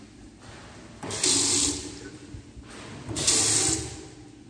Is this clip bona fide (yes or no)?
yes